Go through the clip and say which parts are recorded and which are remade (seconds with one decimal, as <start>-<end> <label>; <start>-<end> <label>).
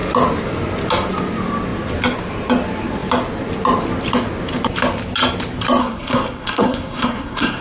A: 0.0-5.8 recorded; 5.8-7.6 remade